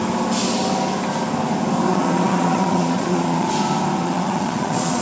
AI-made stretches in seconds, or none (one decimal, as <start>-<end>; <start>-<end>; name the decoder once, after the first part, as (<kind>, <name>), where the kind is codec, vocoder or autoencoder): 1.9-3.5 (vocoder, Vocos); 4.0-5.0